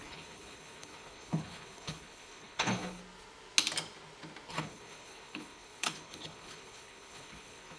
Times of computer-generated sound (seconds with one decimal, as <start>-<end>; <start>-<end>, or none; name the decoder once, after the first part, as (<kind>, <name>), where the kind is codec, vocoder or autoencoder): 0.0-3.0 (codec, HILCodec); 4.5-7.8